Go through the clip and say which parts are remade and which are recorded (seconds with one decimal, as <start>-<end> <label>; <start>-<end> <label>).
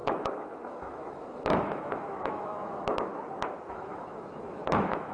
0.0-3.1 remade; 3.1-3.7 recorded; 3.7-5.1 remade